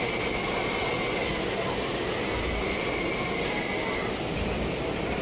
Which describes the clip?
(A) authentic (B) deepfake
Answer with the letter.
A